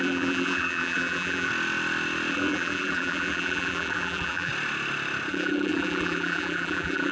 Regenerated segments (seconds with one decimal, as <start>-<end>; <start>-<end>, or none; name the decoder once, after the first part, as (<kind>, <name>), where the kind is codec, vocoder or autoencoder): 0.0-1.5 (vocoder, BigVGAN v2); 2.3-4.5; 5.3-7.1